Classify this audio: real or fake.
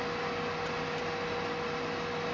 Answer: real